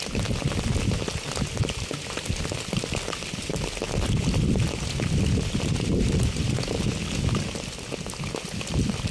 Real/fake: real